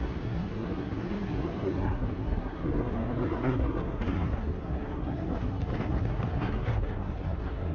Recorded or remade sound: remade